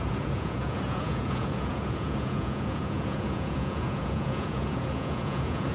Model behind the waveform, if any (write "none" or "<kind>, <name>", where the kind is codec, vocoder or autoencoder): vocoder, Vocos